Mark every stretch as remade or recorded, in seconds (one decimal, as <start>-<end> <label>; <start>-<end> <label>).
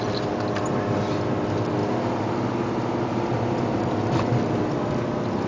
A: 0.0-5.5 recorded